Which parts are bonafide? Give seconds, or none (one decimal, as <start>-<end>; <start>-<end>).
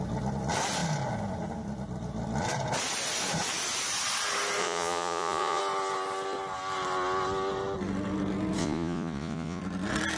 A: 0.0-4.6; 5.6-8.6; 9.6-10.2